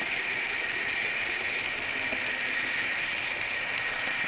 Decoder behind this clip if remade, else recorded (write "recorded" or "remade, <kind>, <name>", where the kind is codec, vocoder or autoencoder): recorded